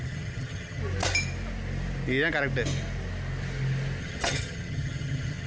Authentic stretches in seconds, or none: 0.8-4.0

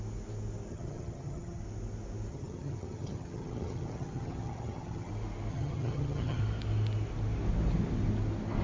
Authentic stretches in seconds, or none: 0.0-0.7; 1.6-2.3; 5.1-5.5; 6.4-8.6

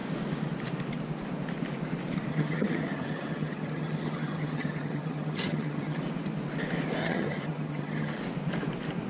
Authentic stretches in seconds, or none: 0.0-2.3; 6.0-7.0; 8.2-9.1

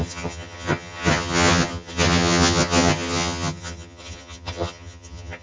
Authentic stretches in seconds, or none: none